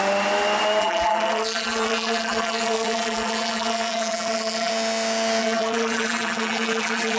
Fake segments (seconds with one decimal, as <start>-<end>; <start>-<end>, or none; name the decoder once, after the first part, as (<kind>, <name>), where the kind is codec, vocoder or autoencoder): 0.8-4.7 (vocoder, BigVGAN v2); 5.4-7.2